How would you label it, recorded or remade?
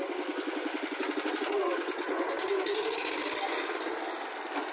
recorded